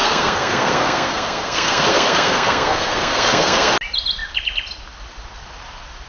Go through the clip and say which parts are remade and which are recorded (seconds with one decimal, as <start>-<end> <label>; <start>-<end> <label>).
0.0-3.7 remade; 3.7-6.1 recorded

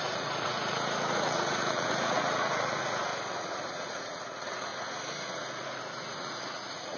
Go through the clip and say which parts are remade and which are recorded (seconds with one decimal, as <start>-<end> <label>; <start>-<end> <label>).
0.0-7.0 remade

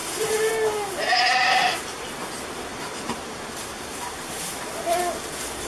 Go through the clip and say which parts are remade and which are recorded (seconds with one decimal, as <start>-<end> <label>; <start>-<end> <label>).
0.0-0.5 remade; 0.5-1.1 recorded; 1.1-2.1 remade; 2.1-2.7 recorded; 2.7-4.2 remade; 4.2-5.7 recorded

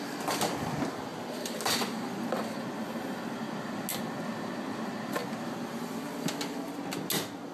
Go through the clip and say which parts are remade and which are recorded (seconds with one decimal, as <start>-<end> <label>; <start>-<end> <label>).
0.0-7.5 recorded

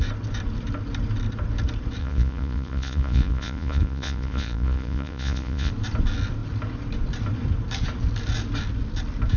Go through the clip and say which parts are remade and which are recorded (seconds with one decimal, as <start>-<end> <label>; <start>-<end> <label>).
0.0-2.0 recorded; 2.0-5.7 remade; 5.7-9.4 recorded

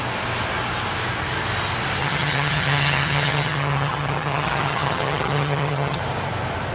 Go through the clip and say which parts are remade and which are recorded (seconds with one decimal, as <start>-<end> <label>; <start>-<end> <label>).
0.0-2.0 recorded; 2.0-6.0 remade; 6.0-6.7 recorded

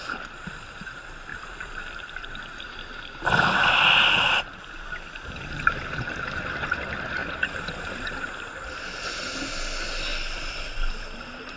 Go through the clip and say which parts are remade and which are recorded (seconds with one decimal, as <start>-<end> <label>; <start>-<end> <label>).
0.0-1.3 recorded; 1.3-5.6 remade; 5.6-7.2 recorded; 7.2-7.8 remade; 7.8-10.1 recorded; 10.1-10.9 remade; 10.9-11.6 recorded